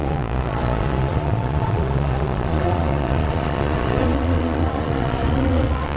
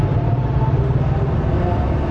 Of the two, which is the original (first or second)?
second